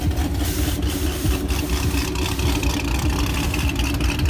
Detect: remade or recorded remade